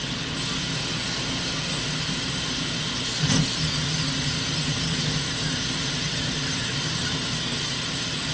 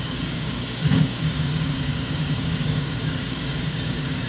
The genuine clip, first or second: first